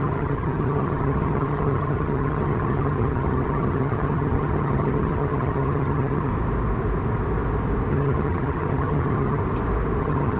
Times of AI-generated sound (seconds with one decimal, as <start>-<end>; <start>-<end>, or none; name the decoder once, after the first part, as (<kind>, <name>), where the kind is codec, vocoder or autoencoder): 0.0-6.3 (vocoder, HiFi-GAN); 7.9-9.4; 10.0-10.4